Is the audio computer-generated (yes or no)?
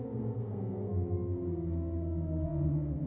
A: yes